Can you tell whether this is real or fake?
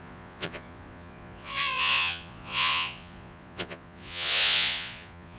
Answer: fake